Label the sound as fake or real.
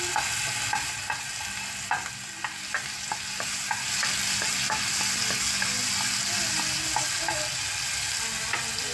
real